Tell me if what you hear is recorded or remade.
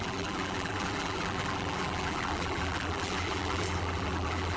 remade